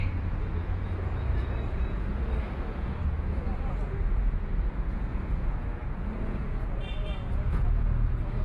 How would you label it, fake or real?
fake